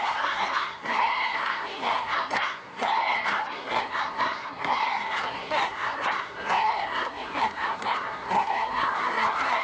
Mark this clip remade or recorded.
remade